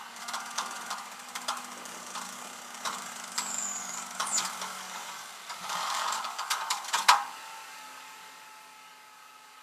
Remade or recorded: remade